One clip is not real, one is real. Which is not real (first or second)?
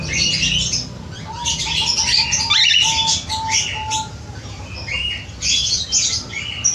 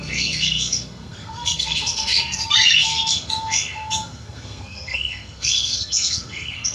second